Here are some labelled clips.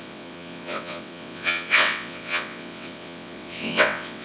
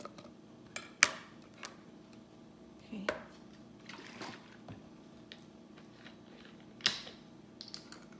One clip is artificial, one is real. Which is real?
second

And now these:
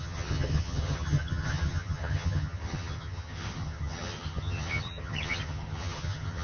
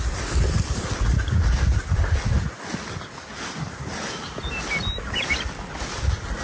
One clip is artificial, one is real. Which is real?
second